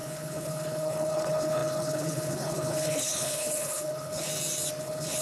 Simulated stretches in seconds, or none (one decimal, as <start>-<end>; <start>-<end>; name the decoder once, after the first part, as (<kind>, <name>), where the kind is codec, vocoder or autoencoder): 0.0-4.3 (codec, HILCodec); 4.8-5.2